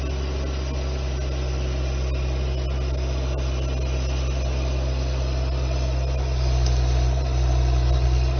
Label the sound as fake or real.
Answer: real